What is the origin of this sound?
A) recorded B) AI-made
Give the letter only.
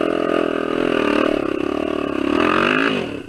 A